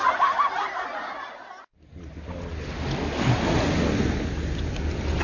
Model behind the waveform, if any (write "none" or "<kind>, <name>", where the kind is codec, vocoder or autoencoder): none